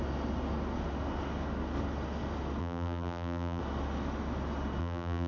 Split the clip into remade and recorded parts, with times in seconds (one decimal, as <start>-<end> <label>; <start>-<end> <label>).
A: 0.0-2.6 recorded; 2.6-3.6 remade; 3.6-4.8 recorded; 4.8-5.3 remade